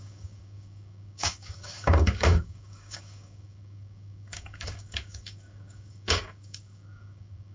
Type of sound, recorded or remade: remade